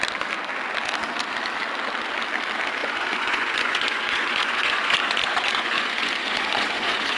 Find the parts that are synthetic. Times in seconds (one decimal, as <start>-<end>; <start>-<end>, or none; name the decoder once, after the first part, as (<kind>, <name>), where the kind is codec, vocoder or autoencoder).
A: 2.8-7.2 (vocoder, Vocos)